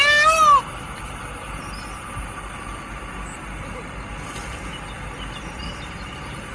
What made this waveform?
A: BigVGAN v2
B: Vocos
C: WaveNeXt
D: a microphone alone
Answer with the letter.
D